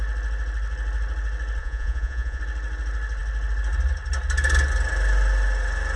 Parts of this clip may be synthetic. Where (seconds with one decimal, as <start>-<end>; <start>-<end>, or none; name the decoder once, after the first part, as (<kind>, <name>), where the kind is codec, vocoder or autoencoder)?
1.6-2.4 (vocoder, Vocos)